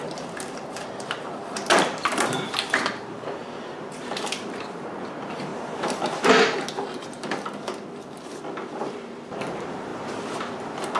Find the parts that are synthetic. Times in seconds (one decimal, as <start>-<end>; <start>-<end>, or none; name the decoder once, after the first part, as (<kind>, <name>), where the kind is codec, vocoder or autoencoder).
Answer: 0.0-5.5 (vocoder, BigVGAN v2); 8.8-9.9